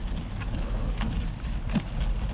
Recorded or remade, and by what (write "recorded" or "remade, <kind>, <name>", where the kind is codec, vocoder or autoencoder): recorded